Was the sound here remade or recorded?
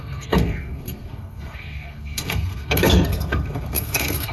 remade